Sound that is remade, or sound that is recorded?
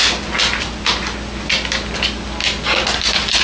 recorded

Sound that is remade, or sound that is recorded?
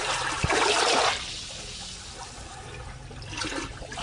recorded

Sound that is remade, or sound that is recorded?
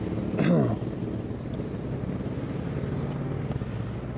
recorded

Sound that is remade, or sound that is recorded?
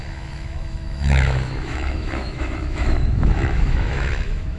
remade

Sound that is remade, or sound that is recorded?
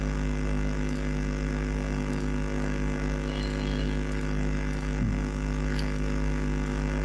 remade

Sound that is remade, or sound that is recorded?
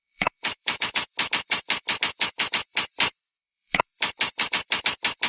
remade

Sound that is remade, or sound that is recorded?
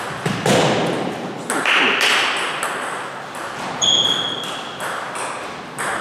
recorded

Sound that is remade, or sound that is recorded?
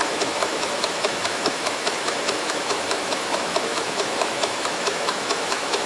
remade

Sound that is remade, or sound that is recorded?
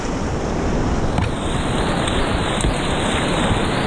recorded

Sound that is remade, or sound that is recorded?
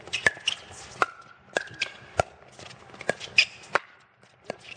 recorded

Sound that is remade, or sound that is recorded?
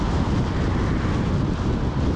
recorded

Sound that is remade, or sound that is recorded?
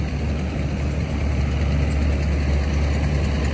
recorded